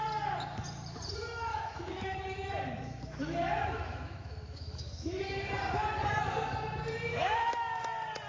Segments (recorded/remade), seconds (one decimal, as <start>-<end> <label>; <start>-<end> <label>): 0.0-1.5 recorded; 1.5-5.2 remade; 5.2-7.1 recorded; 7.1-7.8 remade; 7.8-8.3 recorded